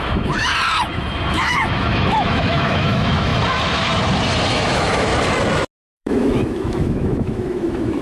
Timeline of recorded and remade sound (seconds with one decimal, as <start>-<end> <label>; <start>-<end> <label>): 0.0-0.5 remade; 0.5-1.3 recorded; 1.3-3.3 remade; 3.3-4.5 recorded; 4.5-5.1 remade; 5.1-5.8 recorded; 5.8-8.0 remade